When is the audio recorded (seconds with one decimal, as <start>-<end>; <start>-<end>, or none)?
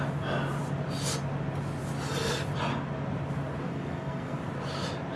0.0-3.7; 4.4-5.2